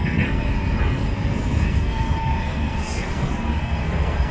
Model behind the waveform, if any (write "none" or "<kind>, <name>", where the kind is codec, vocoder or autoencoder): codec, SNAC